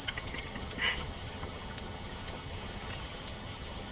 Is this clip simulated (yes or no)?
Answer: yes